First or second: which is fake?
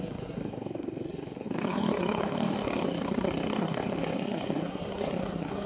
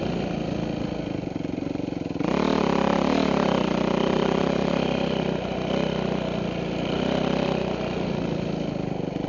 first